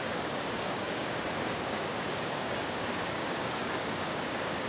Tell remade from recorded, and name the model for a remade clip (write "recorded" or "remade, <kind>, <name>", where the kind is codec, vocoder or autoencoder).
remade, codec, DAC